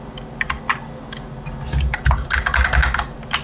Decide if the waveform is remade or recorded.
recorded